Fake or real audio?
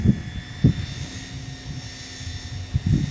real